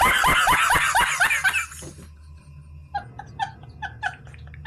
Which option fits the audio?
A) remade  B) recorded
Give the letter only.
B